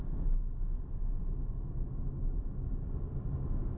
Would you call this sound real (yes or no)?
yes